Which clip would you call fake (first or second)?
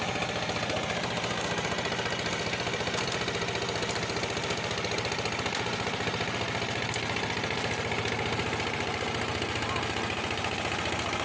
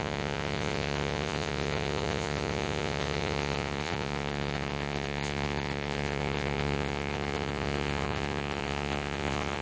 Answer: second